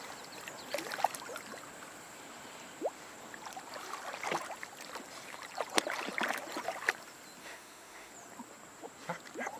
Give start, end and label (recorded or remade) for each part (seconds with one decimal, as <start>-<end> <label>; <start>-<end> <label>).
0.0-7.4 recorded; 7.4-8.1 remade; 8.1-9.6 recorded